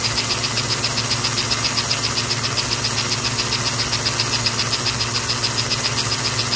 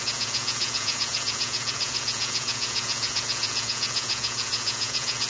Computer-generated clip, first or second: second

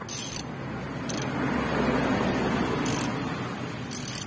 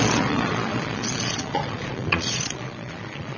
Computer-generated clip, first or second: second